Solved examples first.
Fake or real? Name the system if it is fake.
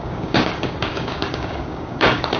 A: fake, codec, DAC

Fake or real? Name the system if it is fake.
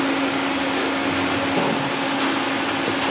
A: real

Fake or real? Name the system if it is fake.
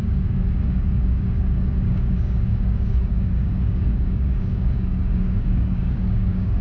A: fake, codec, DAC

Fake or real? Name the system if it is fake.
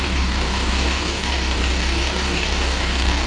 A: fake, codec, DAC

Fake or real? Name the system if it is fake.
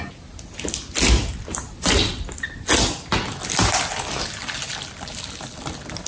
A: real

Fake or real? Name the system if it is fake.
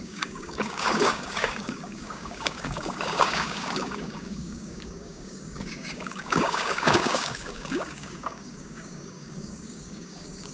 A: fake, codec, DAC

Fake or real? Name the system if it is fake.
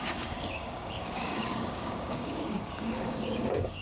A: fake, codec, DAC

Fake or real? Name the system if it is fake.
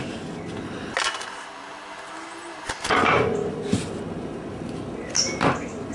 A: real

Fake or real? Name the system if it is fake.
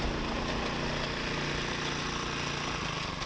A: real